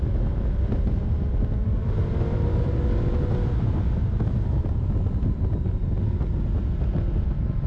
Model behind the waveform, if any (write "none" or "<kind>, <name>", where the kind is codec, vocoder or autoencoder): none